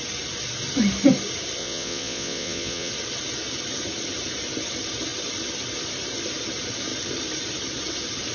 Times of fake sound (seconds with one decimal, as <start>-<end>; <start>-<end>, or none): 1.6-2.9